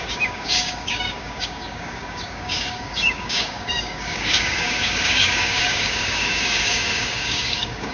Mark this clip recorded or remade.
remade